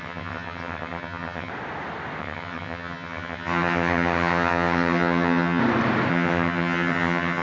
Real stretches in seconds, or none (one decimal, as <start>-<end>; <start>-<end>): 1.5-2.2; 5.6-6.1

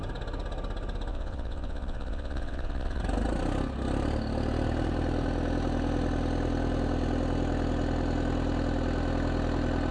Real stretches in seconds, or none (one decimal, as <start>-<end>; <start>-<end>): 0.0-1.1; 3.0-9.9

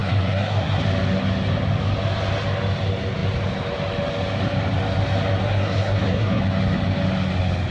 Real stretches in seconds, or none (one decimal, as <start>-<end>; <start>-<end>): 0.8-5.4; 6.4-7.7

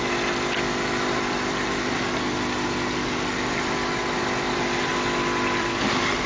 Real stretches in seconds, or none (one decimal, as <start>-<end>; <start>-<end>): 0.0-4.9

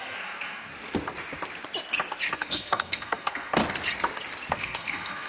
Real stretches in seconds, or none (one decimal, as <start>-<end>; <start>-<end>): 0.7-2.3; 3.6-4.5

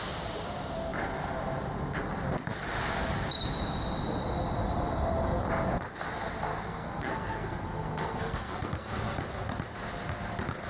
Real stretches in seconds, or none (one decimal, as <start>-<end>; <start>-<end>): 0.0-6.5; 8.9-10.7

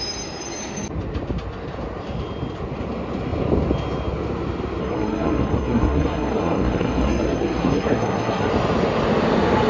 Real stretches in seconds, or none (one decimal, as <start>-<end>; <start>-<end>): 0.0-4.8; 8.5-9.7

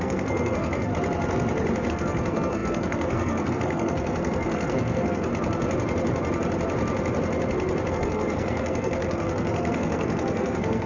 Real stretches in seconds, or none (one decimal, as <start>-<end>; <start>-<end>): 0.9-1.9; 5.3-7.9